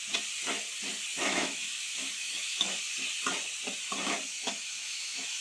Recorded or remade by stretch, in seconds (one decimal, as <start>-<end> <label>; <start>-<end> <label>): 0.0-1.1 recorded; 1.1-2.8 remade; 2.8-4.3 recorded; 4.3-5.4 remade